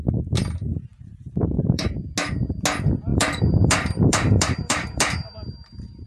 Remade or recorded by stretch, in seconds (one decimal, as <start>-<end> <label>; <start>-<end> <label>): 0.0-0.9 recorded; 0.9-2.1 remade; 2.1-3.1 recorded; 3.1-6.1 remade